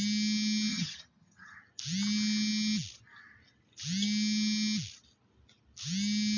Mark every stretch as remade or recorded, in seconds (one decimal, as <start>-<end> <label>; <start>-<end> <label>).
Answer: 0.0-0.7 recorded; 0.7-1.6 remade; 1.6-6.4 recorded